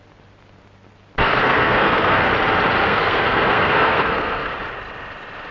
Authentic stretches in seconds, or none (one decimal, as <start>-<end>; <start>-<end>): 0.0-1.2; 2.3-2.8; 4.5-5.5